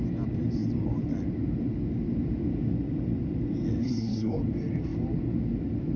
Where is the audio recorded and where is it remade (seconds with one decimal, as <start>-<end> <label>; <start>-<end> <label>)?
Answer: 0.0-3.8 recorded; 3.8-4.4 remade; 4.4-6.0 recorded